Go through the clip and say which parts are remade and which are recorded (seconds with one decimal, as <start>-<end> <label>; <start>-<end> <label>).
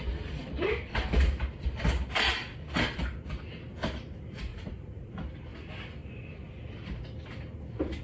0.0-4.5 recorded; 4.5-5.1 remade; 5.1-8.0 recorded